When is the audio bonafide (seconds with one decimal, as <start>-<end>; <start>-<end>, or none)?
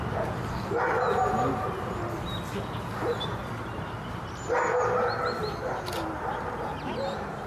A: 0.0-7.5